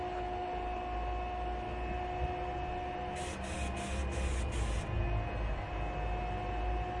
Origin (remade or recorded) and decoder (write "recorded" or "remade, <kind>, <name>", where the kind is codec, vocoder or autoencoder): recorded